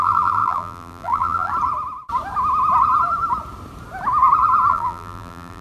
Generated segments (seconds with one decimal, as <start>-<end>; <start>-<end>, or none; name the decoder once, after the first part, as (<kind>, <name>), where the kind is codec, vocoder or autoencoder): 0.0-1.5 (vocoder, BigVGAN v2); 4.7-5.6